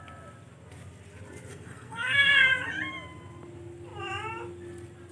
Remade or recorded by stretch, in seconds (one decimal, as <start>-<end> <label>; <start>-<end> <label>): 0.0-1.5 recorded; 1.5-2.5 remade; 2.5-5.1 recorded